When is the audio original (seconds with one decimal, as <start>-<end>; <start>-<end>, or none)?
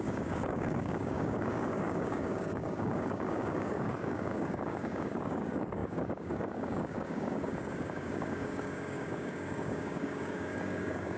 none